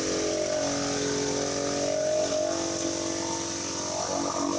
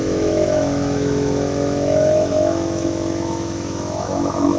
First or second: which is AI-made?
second